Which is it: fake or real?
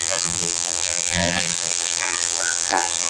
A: fake